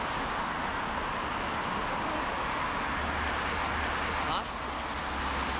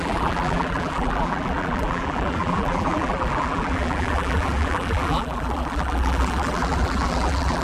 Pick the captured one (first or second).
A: first